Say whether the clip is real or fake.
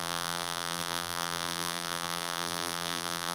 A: fake